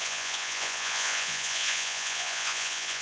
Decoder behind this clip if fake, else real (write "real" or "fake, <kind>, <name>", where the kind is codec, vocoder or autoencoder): fake, vocoder, Vocos